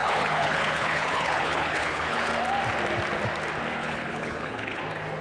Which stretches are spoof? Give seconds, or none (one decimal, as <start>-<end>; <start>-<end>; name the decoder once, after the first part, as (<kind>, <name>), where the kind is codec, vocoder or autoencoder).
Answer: 0.0-2.3 (codec, HILCodec); 3.8-4.8